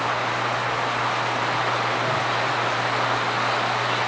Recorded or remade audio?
recorded